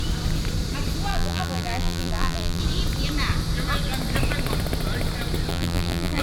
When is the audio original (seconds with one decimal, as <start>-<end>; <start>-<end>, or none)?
0.0-1.1; 2.6-5.5